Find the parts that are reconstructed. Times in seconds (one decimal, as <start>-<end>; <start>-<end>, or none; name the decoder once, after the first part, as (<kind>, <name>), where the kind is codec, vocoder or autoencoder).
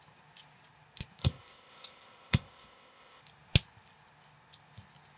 1.2-3.2 (codec, ZipCodec)